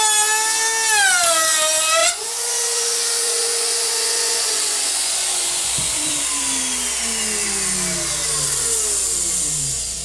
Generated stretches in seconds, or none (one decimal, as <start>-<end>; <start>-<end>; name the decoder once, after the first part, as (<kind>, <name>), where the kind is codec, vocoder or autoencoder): 2.0-6.1 (vocoder, Vocos)